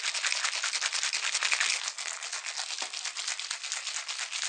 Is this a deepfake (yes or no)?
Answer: no